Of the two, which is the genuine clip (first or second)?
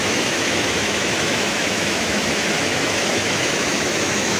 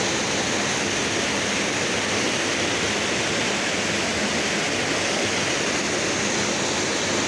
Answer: second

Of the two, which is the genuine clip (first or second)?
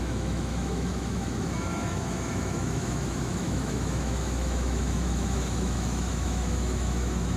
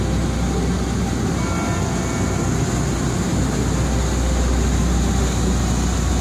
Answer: second